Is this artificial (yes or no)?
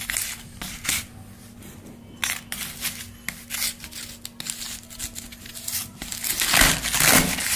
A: no